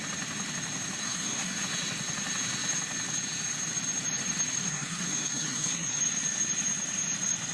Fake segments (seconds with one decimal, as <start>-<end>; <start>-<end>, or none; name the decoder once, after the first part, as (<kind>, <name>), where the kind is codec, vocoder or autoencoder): 1.0-1.6 (codec, SNAC); 4.6-6.0